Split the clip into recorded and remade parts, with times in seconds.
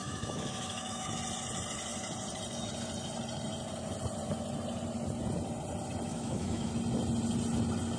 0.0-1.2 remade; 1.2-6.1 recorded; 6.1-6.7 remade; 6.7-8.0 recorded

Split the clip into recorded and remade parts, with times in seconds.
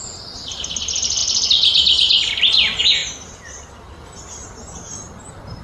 0.0-5.6 recorded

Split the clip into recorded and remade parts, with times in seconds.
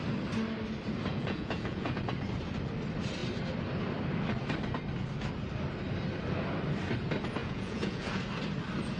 0.0-1.1 recorded; 1.1-2.1 remade; 2.1-7.4 recorded; 7.4-8.2 remade; 8.2-9.0 recorded